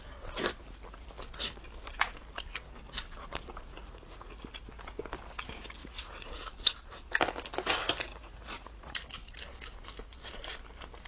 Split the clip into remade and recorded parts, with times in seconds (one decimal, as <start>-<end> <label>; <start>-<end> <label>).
0.0-3.7 recorded; 3.7-4.3 remade; 4.3-5.8 recorded; 5.8-6.5 remade; 6.5-8.1 recorded; 8.1-9.0 remade; 9.0-11.1 recorded